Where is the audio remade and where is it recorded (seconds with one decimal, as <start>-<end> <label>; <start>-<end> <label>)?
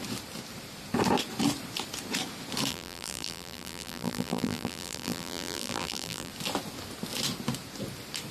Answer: 0.0-2.7 recorded; 2.7-6.3 remade; 6.3-8.3 recorded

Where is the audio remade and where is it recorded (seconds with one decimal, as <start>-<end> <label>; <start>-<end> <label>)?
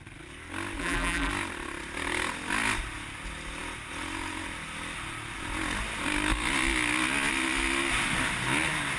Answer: 0.0-0.8 recorded; 0.8-1.3 remade; 1.3-9.0 recorded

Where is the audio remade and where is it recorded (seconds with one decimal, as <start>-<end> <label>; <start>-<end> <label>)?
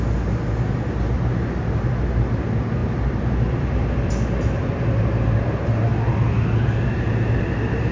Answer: 0.0-2.8 recorded; 2.8-5.0 remade; 5.0-7.9 recorded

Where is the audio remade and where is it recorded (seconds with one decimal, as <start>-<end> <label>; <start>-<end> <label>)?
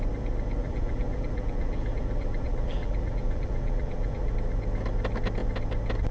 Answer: 0.0-0.6 recorded; 0.6-4.3 remade; 4.3-6.1 recorded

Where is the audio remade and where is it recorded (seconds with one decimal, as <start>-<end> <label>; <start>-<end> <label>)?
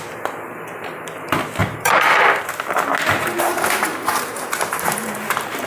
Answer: 0.0-1.6 recorded; 1.6-2.4 remade; 2.4-3.9 recorded; 3.9-5.7 remade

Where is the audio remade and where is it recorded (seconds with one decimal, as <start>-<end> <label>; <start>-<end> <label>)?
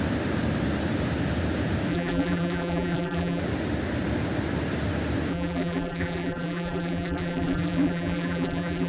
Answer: 0.0-1.9 recorded; 1.9-3.4 remade; 3.4-5.3 recorded; 5.3-8.9 remade